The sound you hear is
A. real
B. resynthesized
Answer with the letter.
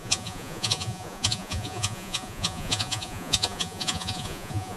B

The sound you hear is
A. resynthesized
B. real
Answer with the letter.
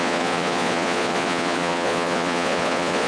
A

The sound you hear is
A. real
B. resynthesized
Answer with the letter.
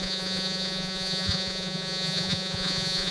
B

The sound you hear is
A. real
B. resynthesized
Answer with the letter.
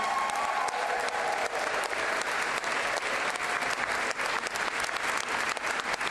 A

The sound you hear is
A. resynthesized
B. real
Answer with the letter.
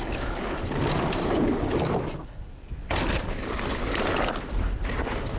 B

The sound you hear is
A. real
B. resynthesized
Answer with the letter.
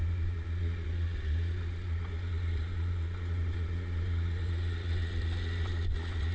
B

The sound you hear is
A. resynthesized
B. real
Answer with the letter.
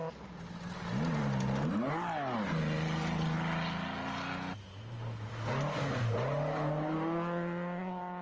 B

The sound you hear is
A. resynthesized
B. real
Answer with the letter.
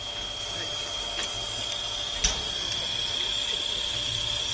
B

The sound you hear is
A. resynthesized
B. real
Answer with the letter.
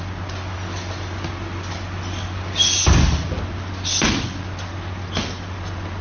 B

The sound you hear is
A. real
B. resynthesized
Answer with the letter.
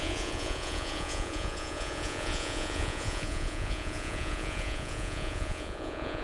B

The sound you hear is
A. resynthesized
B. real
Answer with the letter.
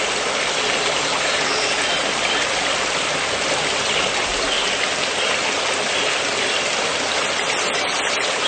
B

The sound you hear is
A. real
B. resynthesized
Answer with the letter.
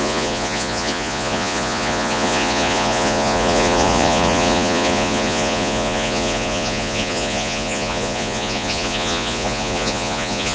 B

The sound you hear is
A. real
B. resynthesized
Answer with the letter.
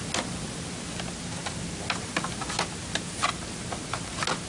A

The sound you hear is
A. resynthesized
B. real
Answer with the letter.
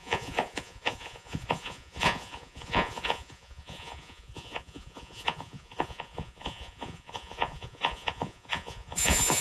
A